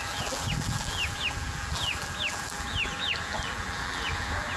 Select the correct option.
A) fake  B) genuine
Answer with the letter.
A